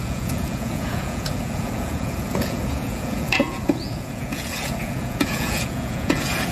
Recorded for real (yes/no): no